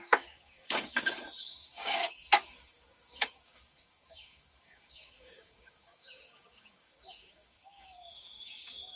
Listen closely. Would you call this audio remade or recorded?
remade